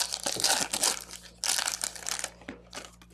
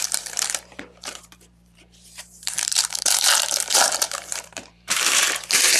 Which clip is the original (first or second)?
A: first